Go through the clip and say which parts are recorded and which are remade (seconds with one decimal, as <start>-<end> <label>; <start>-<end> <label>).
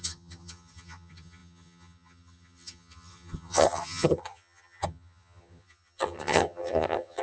0.0-7.2 remade